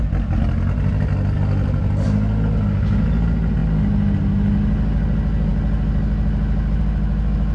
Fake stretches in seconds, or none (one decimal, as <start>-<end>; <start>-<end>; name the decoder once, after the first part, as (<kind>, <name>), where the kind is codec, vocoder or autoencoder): none